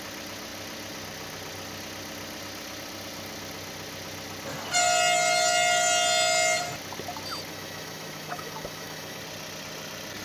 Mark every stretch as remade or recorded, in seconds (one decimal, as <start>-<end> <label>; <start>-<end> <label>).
0.0-7.5 recorded; 7.5-9.2 remade; 9.2-10.2 recorded